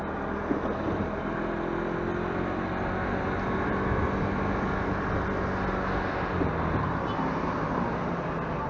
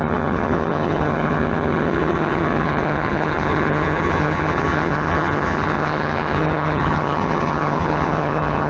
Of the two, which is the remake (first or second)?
second